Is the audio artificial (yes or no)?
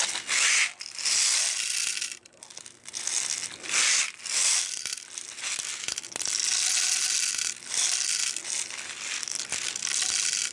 no